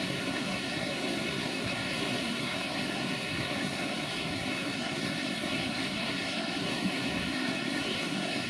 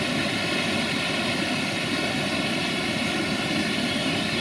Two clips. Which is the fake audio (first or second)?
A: first